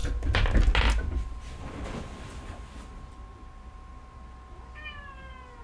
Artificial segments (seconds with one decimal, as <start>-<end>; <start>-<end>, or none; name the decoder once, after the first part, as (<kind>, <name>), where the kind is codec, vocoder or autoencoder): 3.1-3.9 (vocoder, BigVGAN v2)